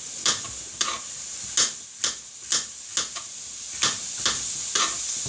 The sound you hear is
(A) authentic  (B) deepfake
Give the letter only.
A